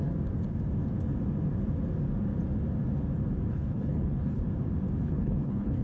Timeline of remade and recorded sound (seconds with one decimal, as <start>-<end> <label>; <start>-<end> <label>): 0.0-3.5 recorded; 3.5-4.4 remade; 4.4-5.0 recorded; 5.0-5.8 remade